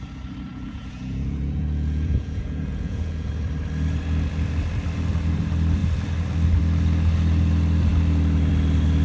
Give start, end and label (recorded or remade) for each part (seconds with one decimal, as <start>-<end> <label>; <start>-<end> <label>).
0.0-0.5 recorded; 0.5-3.3 remade; 3.3-9.0 recorded